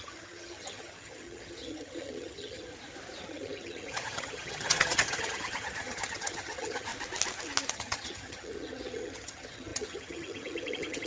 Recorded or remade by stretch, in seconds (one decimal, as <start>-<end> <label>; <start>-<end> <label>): 0.0-2.7 remade; 2.7-3.2 recorded; 3.2-6.9 remade; 6.9-7.7 recorded; 7.7-11.1 remade